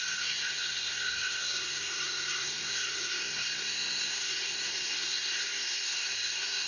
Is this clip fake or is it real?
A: fake